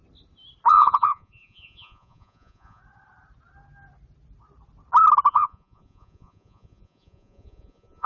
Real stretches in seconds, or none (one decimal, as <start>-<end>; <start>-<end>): 0.0-0.7; 2.8-5.3